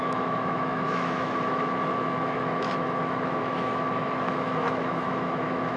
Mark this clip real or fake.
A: fake